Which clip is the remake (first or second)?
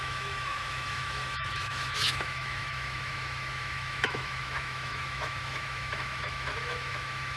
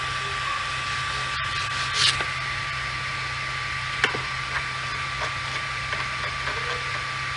first